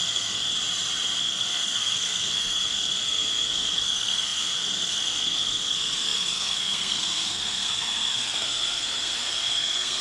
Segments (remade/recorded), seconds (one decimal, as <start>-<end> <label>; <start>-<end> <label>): 0.0-0.5 remade; 0.5-1.2 recorded; 1.2-10.0 remade